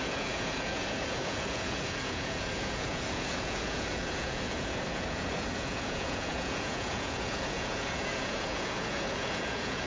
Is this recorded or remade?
remade